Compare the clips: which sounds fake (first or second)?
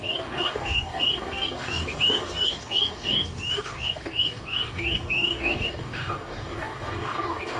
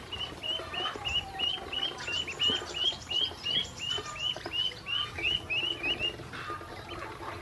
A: first